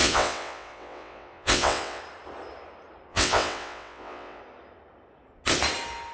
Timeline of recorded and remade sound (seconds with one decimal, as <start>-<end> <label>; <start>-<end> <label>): 0.0-2.0 remade; 2.0-3.1 recorded; 3.1-4.4 remade; 4.4-6.1 recorded